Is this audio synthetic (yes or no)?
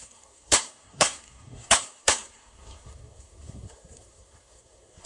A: yes